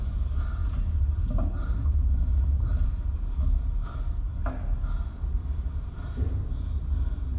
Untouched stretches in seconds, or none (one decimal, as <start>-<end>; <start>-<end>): 0.0-0.6; 2.9-5.3